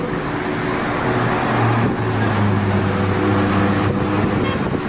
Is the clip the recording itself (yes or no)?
yes